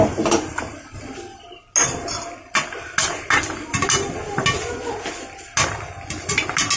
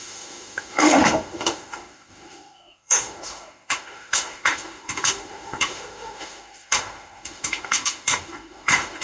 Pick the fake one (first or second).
second